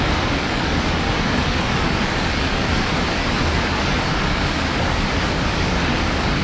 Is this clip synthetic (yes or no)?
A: yes